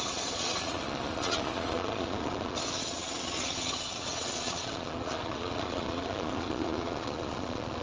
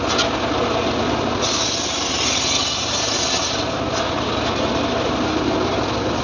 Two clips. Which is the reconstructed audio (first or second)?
first